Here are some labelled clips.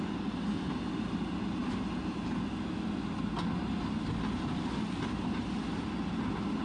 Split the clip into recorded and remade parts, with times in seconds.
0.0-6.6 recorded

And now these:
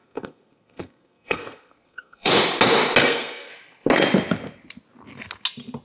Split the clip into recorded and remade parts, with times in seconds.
0.0-2.3 remade; 2.3-3.0 recorded; 3.0-3.5 remade; 3.5-5.8 recorded

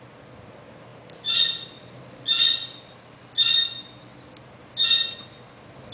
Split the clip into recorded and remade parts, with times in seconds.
0.0-5.9 recorded

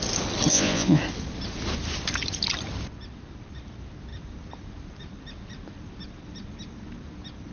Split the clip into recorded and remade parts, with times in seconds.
0.0-0.5 recorded; 0.5-1.0 remade; 1.0-7.5 recorded